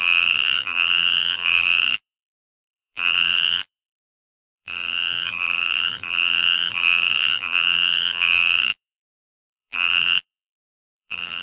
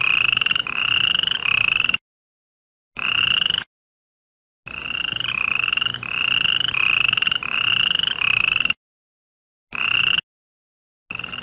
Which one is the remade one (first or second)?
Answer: first